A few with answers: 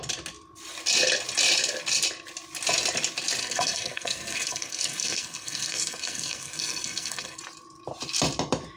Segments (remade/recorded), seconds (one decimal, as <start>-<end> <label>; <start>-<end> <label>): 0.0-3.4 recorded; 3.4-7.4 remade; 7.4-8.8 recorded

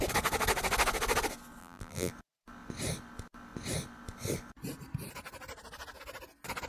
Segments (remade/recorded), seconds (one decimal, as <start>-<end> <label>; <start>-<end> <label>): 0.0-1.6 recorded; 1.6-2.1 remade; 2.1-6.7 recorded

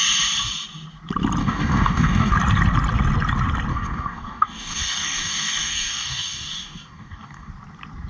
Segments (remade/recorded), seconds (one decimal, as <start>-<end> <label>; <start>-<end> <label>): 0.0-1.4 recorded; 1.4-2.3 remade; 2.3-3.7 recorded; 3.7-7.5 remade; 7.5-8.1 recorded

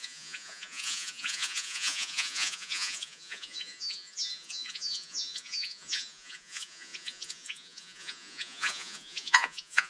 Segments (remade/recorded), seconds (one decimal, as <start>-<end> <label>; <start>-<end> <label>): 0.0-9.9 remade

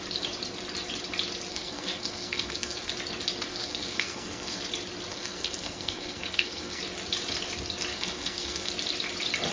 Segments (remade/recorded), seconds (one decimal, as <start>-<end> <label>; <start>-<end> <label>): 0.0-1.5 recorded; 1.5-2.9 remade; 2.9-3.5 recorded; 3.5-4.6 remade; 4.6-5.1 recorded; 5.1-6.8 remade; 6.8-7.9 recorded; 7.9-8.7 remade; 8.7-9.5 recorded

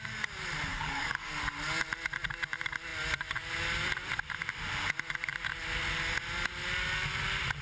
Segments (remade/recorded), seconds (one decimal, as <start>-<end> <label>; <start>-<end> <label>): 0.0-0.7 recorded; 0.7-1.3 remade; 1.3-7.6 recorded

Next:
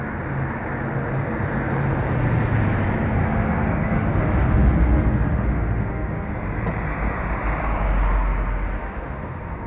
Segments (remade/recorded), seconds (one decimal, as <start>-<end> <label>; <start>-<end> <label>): 0.0-3.2 recorded; 3.2-6.3 remade; 6.3-8.8 recorded; 8.8-9.7 remade